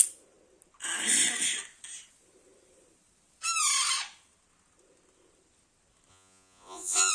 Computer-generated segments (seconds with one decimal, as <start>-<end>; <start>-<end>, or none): 6.1-7.1